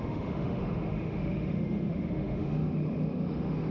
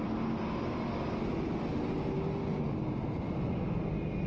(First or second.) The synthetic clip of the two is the first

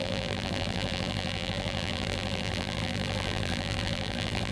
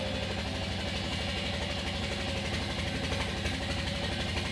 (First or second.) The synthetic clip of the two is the first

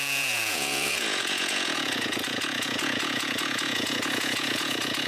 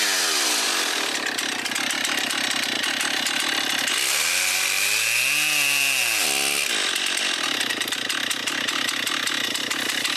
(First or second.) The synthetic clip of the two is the first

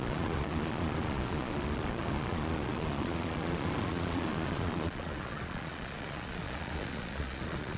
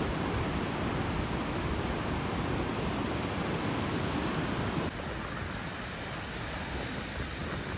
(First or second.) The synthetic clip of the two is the first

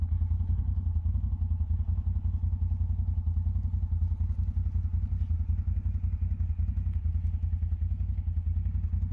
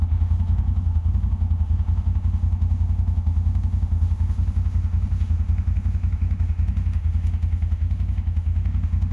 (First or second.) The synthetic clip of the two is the second